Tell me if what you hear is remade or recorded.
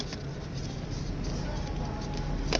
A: recorded